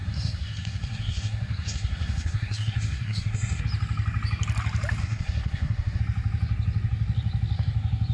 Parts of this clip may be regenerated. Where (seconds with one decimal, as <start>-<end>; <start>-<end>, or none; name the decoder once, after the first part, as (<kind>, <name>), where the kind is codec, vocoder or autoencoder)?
0.0-3.6 (codec, SNAC); 5.0-6.0